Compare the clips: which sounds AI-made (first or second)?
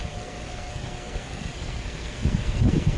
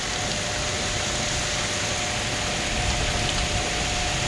first